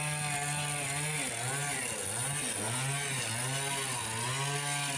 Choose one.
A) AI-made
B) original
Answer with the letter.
B